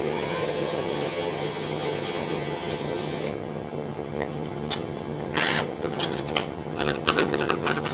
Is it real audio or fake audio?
fake